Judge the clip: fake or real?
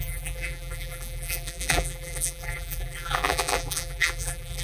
fake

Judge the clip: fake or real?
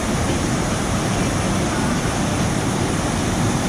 fake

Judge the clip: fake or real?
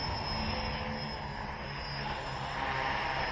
real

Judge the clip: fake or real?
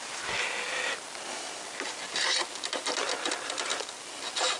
real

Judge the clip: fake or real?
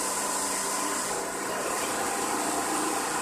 fake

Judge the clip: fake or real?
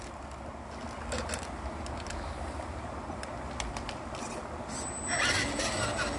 real